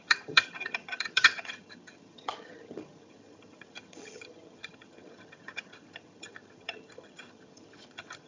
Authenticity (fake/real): fake